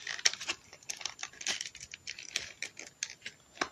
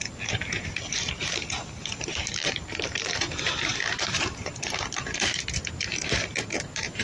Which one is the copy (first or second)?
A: second